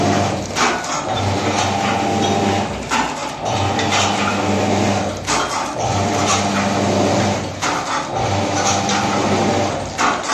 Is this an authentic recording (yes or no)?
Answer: yes